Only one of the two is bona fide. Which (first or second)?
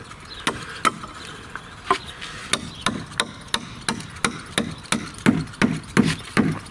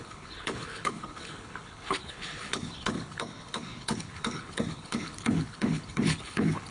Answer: first